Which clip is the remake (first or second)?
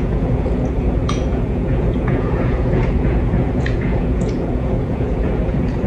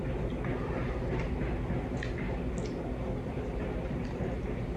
first